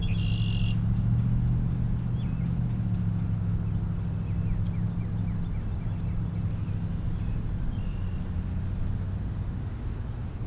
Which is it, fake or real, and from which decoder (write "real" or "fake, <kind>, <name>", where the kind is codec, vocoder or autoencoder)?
real